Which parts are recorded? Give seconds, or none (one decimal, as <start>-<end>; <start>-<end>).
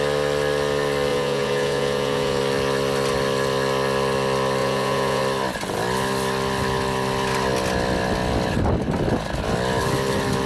0.0-1.1; 2.4-4.6; 5.2-10.5